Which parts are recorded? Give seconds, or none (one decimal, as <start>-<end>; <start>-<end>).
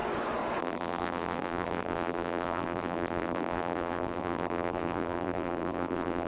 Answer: 0.0-0.6